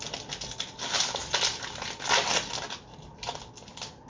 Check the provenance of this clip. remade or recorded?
recorded